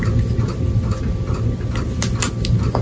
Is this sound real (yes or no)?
yes